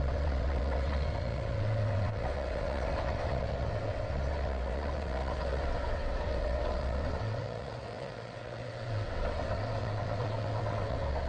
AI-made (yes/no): yes